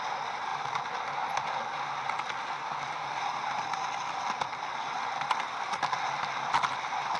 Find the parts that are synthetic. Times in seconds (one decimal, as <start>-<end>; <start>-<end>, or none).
none